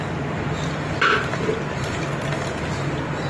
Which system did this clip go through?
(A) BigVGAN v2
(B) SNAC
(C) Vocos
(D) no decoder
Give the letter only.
D